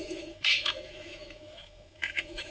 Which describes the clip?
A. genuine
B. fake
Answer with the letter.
B